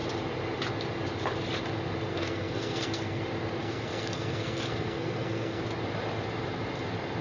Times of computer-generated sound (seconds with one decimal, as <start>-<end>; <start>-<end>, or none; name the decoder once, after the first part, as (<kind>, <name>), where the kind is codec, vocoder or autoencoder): 2.1-3.2 (codec, SNAC); 3.6-5.6